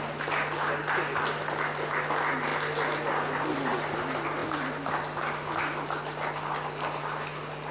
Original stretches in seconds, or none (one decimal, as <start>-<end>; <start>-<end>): 0.0-7.7